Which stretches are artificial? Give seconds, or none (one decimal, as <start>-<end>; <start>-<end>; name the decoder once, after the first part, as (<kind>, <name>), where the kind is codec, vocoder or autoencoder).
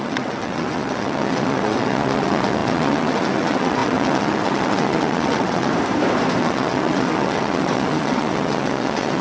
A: 0.0-5.7 (vocoder, WaveNeXt); 6.4-9.2